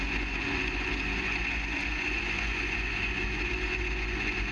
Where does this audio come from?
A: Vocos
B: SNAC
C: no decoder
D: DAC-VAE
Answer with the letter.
A